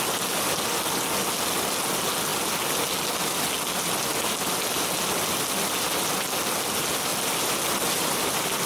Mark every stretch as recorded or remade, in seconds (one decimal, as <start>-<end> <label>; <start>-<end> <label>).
0.0-7.1 recorded; 7.1-8.7 remade